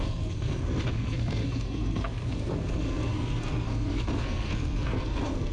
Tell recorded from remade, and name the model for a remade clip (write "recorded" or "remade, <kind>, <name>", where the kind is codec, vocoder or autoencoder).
remade, codec, SNAC